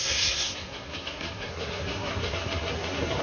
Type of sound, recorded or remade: remade